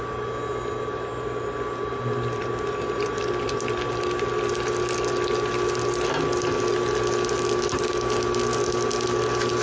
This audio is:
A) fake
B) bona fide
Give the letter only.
B